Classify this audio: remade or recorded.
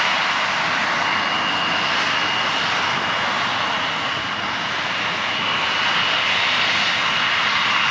recorded